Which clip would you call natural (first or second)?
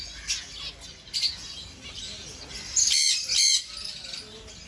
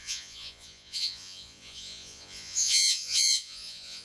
first